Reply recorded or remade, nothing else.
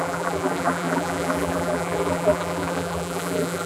remade